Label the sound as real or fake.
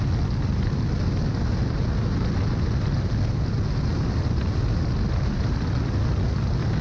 real